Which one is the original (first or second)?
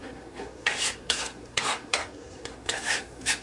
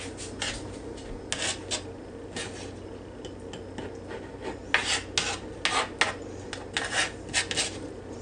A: second